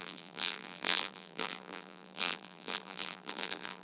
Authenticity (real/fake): fake